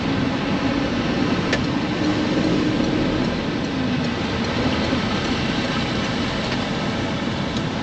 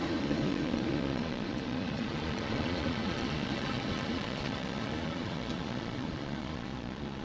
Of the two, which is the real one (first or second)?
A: first